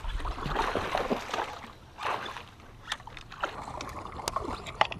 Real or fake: real